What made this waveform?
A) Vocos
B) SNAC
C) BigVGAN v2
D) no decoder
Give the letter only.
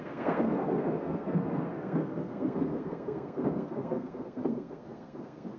B